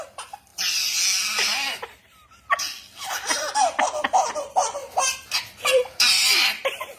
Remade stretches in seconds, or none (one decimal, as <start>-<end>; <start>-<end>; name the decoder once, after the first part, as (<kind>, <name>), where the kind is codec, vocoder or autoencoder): 0.0-4.8 (vocoder, BigVGAN v2); 5.4-7.0